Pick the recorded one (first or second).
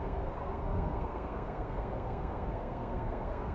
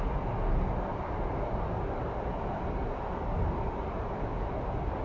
second